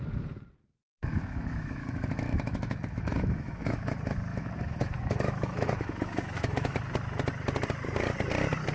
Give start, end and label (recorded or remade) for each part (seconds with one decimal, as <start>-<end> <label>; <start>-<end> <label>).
0.0-0.8 recorded; 0.8-3.9 remade; 3.9-4.3 recorded; 4.3-6.8 remade; 6.8-8.7 recorded